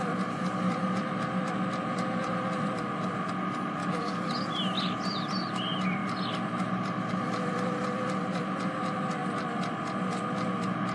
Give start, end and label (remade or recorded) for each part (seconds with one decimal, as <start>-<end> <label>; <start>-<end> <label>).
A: 0.0-3.8 recorded; 3.8-4.3 remade; 4.3-10.9 recorded